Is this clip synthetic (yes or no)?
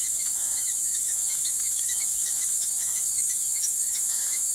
yes